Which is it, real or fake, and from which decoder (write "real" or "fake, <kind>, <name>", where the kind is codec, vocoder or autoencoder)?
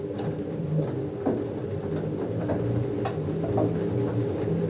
real